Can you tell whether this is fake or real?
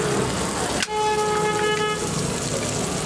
real